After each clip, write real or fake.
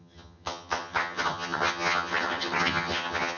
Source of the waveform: fake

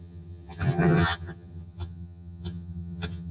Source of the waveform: fake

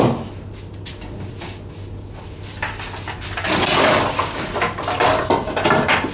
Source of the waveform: real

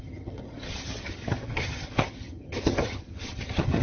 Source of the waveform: fake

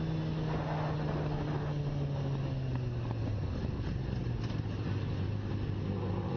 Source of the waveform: real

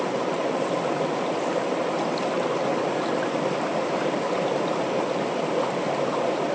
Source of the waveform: real